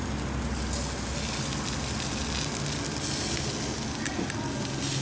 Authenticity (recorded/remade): recorded